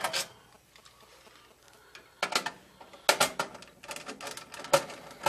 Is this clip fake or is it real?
real